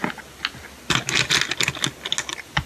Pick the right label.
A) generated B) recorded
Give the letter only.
B